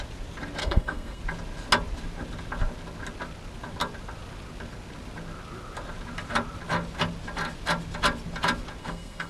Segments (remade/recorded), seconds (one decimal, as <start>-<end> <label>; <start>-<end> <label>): 0.0-0.6 recorded; 0.6-1.2 remade; 1.2-8.8 recorded; 8.8-9.3 remade